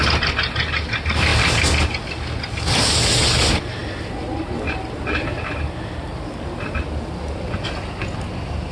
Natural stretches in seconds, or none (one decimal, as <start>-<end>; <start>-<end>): 0.0-8.7